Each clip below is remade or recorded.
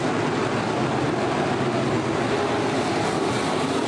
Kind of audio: recorded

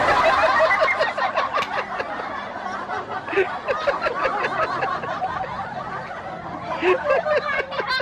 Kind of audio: recorded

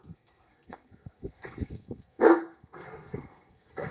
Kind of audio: remade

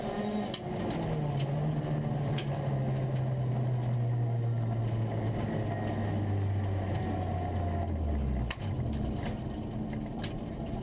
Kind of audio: recorded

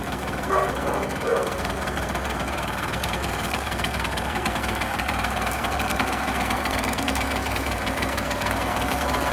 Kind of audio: remade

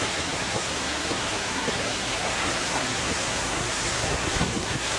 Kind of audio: remade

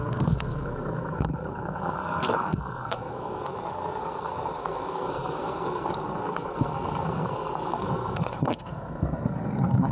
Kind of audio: remade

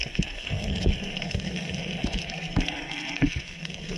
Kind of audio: remade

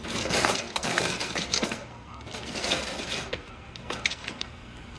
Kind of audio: remade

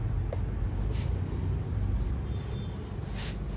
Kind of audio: recorded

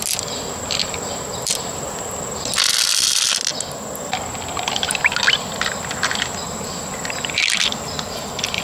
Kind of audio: recorded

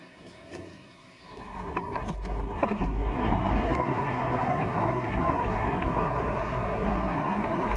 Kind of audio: remade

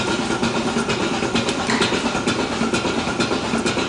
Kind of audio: recorded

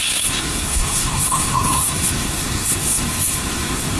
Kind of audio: remade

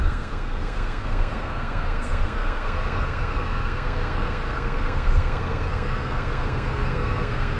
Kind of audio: remade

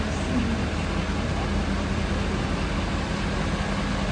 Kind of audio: recorded